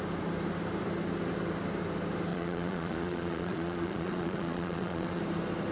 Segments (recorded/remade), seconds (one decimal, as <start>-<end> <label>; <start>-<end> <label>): 0.0-2.3 recorded; 2.3-5.2 remade; 5.2-5.7 recorded